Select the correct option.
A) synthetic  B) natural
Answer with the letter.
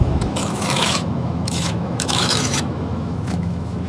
A